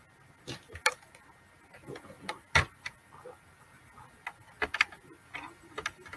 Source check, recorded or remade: recorded